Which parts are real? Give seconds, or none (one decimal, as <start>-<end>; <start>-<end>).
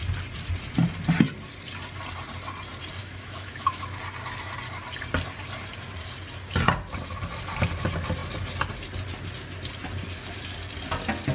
0.0-3.0; 3.8-11.3